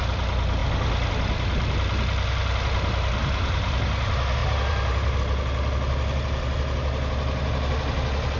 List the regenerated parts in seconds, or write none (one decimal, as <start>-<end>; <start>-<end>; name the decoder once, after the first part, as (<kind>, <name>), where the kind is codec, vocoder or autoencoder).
3.2-3.8 (vocoder, BigVGAN v2); 4.4-5.2

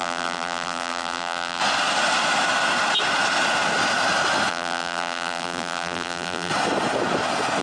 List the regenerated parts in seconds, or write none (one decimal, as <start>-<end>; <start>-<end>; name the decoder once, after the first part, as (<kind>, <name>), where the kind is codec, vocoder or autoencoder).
0.0-1.6 (vocoder, BigVGAN v2); 4.5-6.5

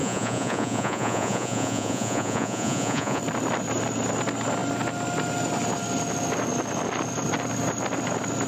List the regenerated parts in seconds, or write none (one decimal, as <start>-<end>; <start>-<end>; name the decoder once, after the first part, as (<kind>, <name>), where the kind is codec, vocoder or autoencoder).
0.0-3.2 (vocoder, Vocos)